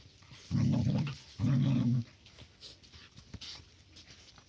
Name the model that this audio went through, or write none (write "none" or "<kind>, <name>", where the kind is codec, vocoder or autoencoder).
none